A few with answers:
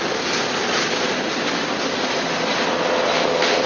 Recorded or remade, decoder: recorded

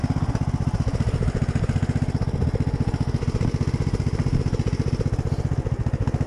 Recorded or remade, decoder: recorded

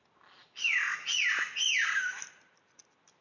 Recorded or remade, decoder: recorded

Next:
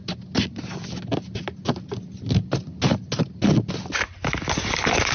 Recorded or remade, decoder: recorded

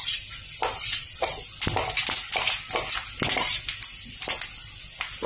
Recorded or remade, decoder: recorded